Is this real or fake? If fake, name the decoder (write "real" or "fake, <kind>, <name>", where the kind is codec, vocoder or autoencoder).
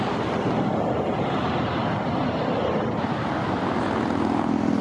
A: real